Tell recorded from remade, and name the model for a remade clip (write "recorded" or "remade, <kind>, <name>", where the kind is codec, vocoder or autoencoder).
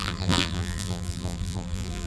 remade, vocoder, BigVGAN v2